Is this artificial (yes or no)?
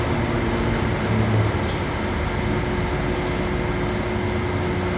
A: no